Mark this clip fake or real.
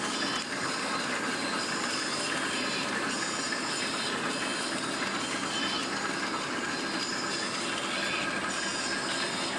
real